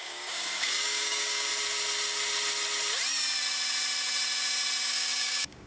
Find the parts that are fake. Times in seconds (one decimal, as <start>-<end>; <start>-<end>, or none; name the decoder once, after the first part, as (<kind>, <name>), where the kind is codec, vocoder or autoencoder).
0.0-1.5 (codec, DAC); 4.9-5.7